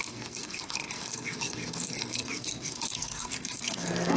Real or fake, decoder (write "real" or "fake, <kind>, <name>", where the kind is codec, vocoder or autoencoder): fake, codec, SNAC